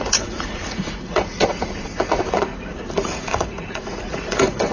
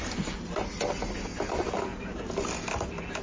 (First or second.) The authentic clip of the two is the second